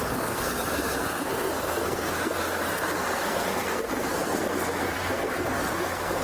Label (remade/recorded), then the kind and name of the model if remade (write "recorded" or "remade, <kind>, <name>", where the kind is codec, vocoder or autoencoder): remade, codec, SNAC